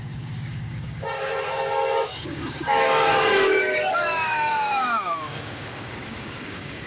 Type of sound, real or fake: fake